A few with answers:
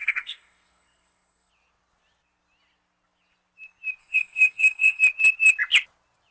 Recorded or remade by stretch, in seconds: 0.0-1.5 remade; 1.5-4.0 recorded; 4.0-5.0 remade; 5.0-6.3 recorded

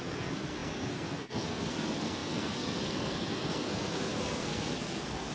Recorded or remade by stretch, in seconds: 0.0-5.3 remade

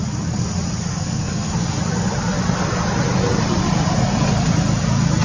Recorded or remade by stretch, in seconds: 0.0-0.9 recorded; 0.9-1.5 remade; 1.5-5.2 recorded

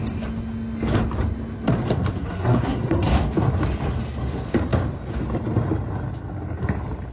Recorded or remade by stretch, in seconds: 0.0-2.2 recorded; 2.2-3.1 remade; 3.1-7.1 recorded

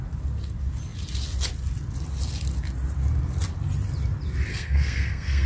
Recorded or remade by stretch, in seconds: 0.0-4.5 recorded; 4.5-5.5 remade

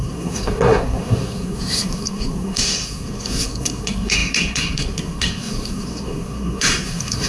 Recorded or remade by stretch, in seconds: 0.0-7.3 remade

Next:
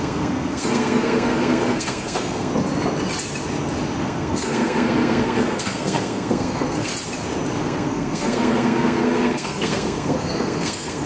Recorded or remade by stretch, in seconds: 0.0-2.5 remade; 2.5-4.0 recorded; 4.0-6.9 remade; 6.9-7.6 recorded; 7.6-11.1 remade